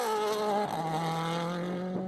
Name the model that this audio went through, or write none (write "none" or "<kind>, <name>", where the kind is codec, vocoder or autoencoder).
none